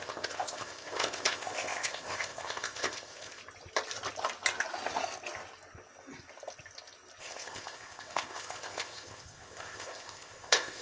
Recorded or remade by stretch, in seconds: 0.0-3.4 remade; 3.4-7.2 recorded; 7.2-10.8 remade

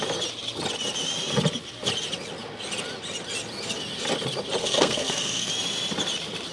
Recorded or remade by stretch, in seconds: 0.0-4.6 recorded; 4.6-5.5 remade; 5.5-6.5 recorded

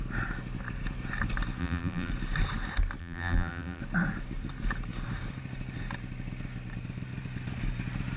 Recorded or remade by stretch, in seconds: 0.0-1.6 recorded; 1.6-2.1 remade; 2.1-3.0 recorded; 3.0-3.8 remade; 3.8-8.2 recorded

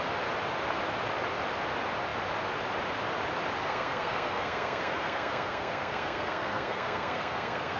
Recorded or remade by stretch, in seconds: 0.0-3.6 recorded; 3.6-7.8 remade

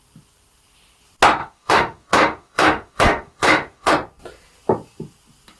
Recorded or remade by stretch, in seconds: 0.0-1.4 recorded; 1.4-3.9 remade; 3.9-5.6 recorded

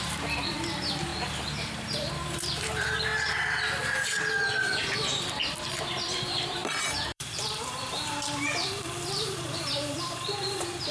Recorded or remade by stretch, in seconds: 0.0-1.1 remade; 1.1-2.1 recorded; 2.1-3.1 remade; 3.1-5.8 recorded; 5.8-10.9 remade

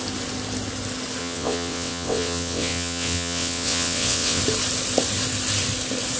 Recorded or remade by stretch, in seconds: 0.0-1.2 recorded; 1.2-4.4 remade; 4.4-6.2 recorded